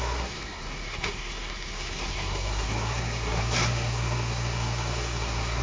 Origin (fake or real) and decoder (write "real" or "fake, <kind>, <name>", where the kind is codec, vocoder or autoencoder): fake, codec, SNAC